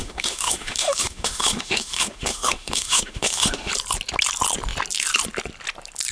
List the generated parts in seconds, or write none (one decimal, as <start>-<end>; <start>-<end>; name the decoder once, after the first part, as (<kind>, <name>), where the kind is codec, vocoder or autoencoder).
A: 0.0-3.7 (autoencoder, DAC-VAE)